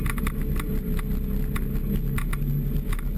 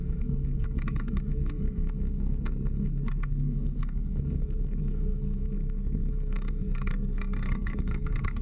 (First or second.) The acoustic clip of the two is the first